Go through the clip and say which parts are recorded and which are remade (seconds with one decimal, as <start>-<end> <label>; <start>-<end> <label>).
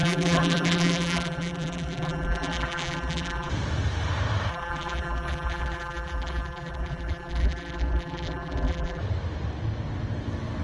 0.0-3.5 remade; 3.5-4.5 recorded; 4.5-9.0 remade; 9.0-10.6 recorded